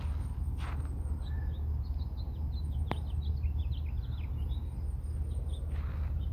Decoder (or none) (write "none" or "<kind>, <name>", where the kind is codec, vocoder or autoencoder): none